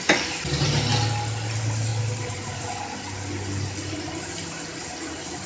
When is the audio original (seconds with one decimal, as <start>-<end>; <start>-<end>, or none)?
0.0-1.9; 2.9-5.5